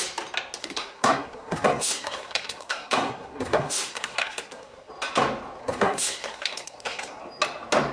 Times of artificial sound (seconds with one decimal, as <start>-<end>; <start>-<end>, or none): 0.6-4.9; 5.6-7.2